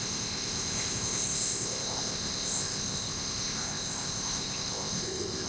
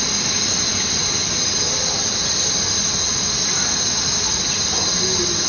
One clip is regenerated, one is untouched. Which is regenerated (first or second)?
first